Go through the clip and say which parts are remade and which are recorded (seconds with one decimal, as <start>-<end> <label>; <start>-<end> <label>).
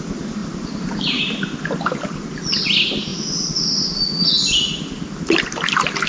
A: 0.0-6.1 recorded